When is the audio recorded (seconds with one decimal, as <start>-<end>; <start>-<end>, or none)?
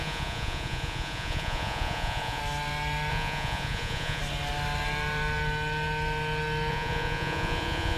2.4-3.1; 4.2-6.7